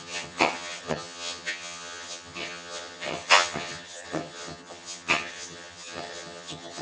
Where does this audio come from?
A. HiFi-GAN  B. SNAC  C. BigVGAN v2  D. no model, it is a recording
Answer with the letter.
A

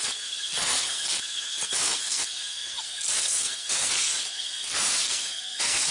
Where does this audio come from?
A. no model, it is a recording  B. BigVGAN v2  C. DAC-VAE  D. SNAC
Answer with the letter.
D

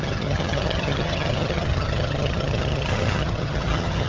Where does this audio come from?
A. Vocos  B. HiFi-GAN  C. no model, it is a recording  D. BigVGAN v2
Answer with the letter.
B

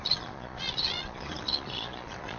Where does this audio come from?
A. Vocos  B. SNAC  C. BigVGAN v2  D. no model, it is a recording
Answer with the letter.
A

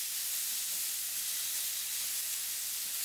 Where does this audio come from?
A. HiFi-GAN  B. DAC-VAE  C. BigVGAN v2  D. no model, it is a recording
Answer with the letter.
D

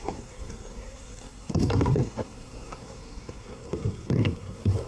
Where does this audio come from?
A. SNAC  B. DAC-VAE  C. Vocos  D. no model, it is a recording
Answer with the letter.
A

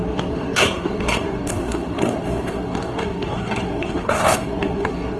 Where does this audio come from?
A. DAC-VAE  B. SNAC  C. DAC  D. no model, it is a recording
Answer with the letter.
B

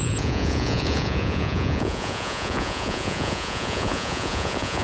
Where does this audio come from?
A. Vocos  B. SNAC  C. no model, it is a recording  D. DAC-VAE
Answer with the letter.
A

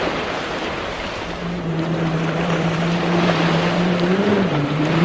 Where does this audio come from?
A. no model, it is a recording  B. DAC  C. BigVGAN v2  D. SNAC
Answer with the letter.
C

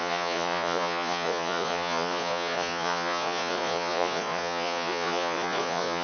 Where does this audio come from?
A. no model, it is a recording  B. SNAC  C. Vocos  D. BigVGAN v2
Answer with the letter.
C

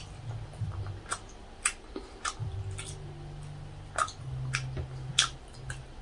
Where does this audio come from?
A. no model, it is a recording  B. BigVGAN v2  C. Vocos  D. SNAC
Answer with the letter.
A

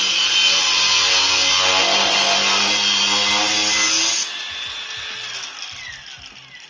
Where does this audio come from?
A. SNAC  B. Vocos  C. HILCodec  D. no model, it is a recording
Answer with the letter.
D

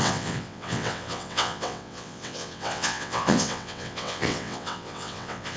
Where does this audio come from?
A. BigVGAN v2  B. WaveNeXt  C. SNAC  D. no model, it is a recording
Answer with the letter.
B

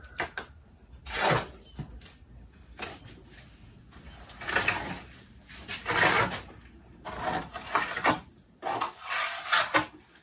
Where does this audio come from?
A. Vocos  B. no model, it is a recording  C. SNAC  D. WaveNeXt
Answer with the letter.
B